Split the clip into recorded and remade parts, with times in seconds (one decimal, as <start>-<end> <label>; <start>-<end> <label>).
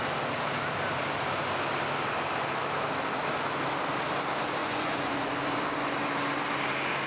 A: 0.0-4.6 recorded; 4.6-5.3 remade; 5.3-7.1 recorded